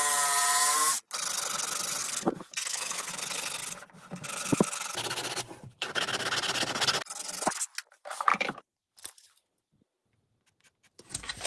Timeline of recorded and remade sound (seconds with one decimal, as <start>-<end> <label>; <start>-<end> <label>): 0.0-2.0 recorded; 2.0-3.1 remade; 3.1-11.5 recorded